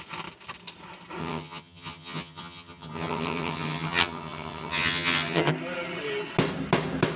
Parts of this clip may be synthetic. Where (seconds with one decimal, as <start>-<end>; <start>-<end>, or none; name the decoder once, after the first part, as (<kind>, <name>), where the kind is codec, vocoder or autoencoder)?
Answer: 1.2-5.5 (vocoder, HiFi-GAN)